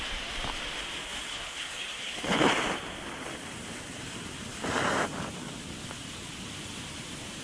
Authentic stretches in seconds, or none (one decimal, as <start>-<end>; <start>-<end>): 0.0-1.3; 2.5-7.4